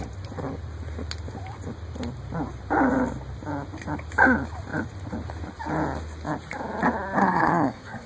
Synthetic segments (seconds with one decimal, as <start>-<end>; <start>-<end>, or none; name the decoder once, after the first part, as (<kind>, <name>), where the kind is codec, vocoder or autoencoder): 7.2-8.1 (codec, SNAC)